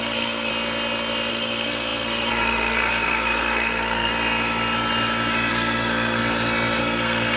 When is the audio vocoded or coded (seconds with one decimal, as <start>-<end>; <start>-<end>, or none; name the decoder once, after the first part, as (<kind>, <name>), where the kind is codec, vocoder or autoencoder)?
0.0-0.5 (codec, SNAC); 1.3-4.1; 5.5-6.2; 6.8-7.4